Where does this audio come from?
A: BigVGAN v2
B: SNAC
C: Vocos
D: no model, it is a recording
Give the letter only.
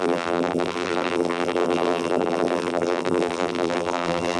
A